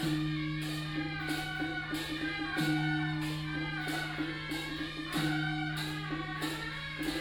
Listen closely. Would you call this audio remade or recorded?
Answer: recorded